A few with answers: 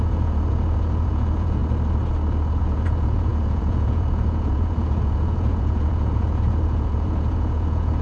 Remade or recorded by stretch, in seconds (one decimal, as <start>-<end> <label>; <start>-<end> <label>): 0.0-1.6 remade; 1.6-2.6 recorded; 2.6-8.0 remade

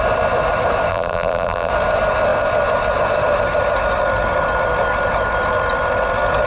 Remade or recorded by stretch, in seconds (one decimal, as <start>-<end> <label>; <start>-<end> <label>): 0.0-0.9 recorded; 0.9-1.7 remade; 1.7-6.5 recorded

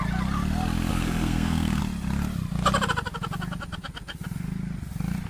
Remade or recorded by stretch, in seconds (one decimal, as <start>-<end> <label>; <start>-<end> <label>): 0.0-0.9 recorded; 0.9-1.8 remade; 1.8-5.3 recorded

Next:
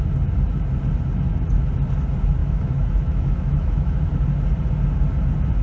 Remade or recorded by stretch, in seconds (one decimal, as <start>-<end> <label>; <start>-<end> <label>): 0.0-2.4 recorded; 2.4-4.1 remade; 4.1-5.6 recorded

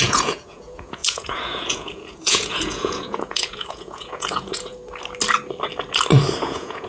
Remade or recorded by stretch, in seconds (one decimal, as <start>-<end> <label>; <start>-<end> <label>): 0.0-4.8 remade; 4.8-6.4 recorded; 6.4-6.9 remade

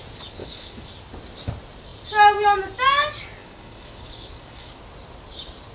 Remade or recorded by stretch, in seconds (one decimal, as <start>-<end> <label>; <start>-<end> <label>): 0.0-0.4 recorded; 0.4-0.9 remade; 0.9-3.4 recorded; 3.4-4.8 remade; 4.8-5.7 recorded